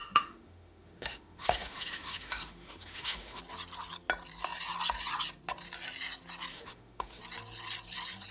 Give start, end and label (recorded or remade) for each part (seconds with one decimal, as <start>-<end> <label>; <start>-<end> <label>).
0.0-3.4 remade; 3.4-6.5 recorded; 6.5-7.2 remade; 7.2-8.3 recorded